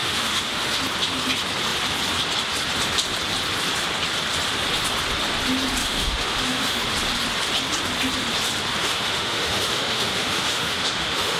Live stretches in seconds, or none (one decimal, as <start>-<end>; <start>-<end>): 0.8-5.8; 6.8-8.8